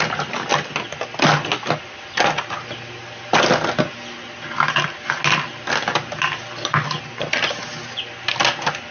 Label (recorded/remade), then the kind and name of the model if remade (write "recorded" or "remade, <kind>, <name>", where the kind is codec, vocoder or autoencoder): recorded